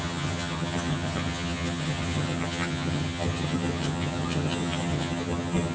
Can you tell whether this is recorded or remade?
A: remade